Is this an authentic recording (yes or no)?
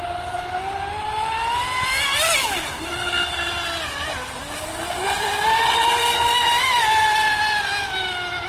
no